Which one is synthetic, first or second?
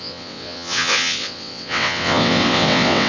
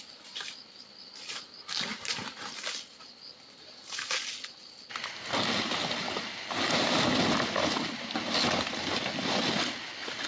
first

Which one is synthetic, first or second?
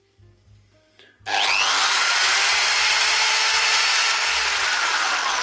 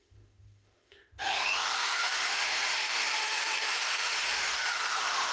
second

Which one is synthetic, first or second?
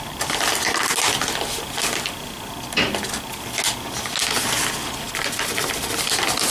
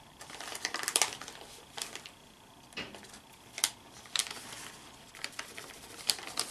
second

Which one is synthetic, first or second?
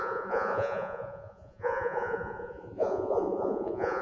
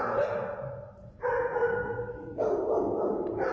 first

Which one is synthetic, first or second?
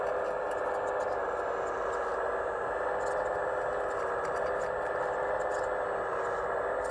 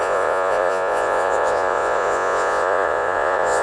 second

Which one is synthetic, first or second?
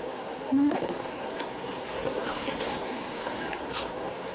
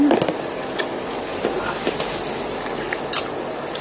first